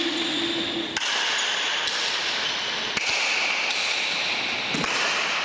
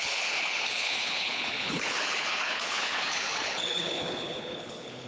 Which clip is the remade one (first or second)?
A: second